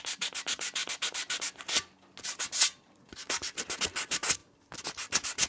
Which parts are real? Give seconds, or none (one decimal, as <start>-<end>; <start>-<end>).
0.0-5.5

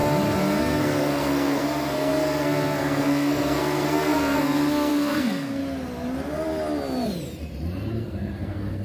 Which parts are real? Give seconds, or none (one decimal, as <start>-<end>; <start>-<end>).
0.0-0.6; 5.6-7.9

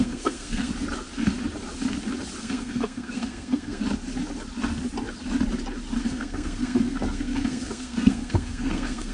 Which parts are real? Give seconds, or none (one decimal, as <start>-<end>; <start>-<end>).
0.7-2.4; 3.8-6.0

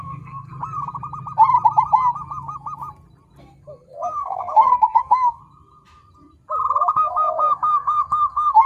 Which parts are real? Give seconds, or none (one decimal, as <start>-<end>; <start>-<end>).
0.5-3.4; 5.4-6.8

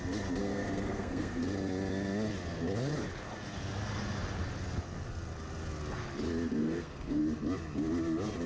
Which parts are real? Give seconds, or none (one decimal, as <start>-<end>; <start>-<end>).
0.0-0.4; 1.4-6.6; 7.2-8.5

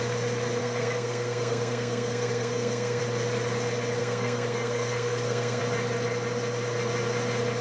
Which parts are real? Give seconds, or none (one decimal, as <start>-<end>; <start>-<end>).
0.0-0.6; 3.0-4.0; 5.6-7.6

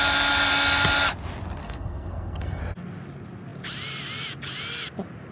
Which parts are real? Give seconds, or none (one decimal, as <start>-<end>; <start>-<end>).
0.0-1.6; 2.6-5.3

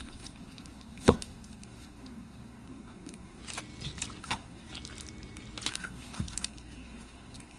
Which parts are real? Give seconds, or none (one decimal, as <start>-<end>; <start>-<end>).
3.4-4.2; 4.7-5.7